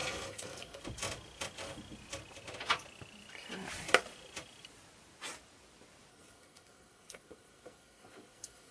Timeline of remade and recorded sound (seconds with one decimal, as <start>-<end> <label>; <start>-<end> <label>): 0.0-0.8 remade; 0.8-6.1 recorded; 6.1-8.7 remade